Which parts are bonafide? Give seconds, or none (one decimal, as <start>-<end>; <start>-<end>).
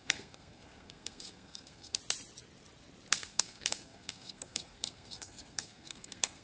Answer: 2.0-3.1